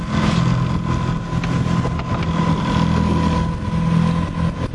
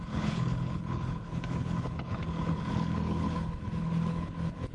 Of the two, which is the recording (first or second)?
first